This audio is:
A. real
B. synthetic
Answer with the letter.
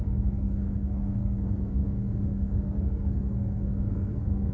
B